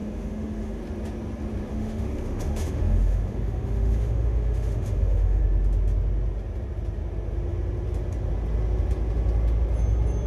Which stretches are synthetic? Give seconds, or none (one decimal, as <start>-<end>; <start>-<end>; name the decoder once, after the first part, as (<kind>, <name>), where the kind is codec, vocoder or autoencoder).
0.0-0.8 (autoencoder, DAC-VAE); 1.7-5.4